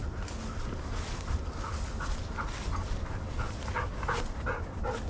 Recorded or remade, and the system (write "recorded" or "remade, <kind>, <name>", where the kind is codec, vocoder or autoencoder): recorded